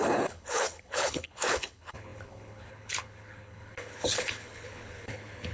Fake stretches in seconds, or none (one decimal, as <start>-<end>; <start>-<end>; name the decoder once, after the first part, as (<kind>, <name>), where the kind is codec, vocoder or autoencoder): 0.0-5.5 (codec, HILCodec)